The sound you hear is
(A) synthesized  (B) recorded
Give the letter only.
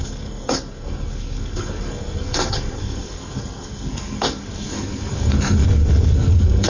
A